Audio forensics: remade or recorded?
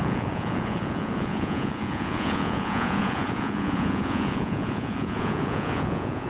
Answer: remade